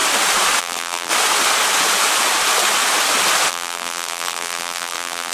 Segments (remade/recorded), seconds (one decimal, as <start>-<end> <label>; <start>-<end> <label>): 0.0-0.6 recorded; 0.6-1.1 remade; 1.1-3.5 recorded; 3.5-5.3 remade